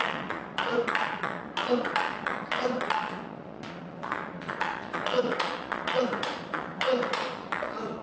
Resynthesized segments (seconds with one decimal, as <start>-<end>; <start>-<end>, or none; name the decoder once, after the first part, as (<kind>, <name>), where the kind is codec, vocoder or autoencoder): 0.0-8.0 (vocoder, Vocos)